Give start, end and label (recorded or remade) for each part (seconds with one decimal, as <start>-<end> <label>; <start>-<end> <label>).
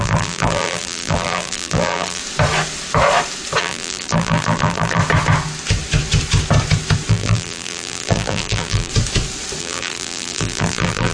0.0-2.2 remade; 2.2-3.6 recorded; 3.6-5.0 remade; 5.0-7.1 recorded; 7.1-8.9 remade; 8.9-9.6 recorded; 9.6-11.1 remade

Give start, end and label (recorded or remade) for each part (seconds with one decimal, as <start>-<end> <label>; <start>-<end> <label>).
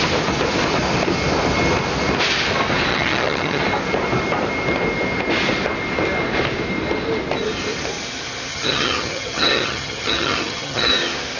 0.0-2.9 recorded; 2.9-3.6 remade; 3.6-8.5 recorded; 8.5-10.9 remade; 10.9-11.4 recorded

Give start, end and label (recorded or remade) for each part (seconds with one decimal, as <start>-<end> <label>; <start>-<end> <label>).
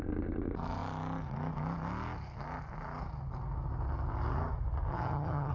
0.0-4.9 recorded; 4.9-5.5 remade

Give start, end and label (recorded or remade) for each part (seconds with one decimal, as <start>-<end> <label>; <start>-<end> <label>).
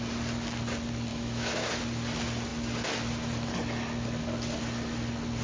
0.0-1.1 recorded; 1.1-1.8 remade; 1.8-5.4 recorded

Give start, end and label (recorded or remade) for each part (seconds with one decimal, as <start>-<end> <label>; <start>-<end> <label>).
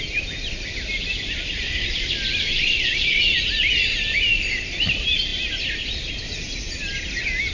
0.0-2.5 recorded; 2.5-3.2 remade; 3.2-7.5 recorded